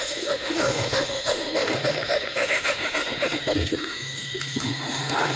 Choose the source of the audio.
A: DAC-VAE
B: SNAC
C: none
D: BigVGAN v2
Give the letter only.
A